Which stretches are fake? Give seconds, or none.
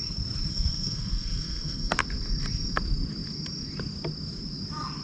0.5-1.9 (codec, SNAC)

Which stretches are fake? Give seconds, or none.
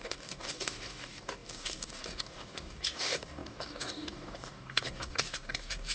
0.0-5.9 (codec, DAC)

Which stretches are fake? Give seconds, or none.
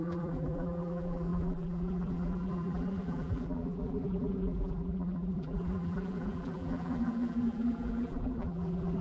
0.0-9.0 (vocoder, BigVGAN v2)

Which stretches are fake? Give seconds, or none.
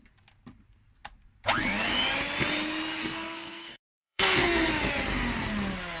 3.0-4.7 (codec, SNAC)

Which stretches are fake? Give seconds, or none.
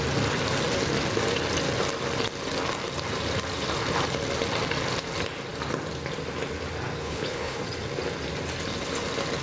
7.0-7.6 (codec, HILCodec)